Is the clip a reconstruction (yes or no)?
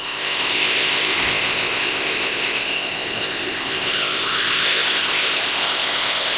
yes